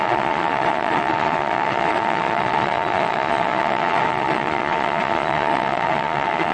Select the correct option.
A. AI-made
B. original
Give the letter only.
A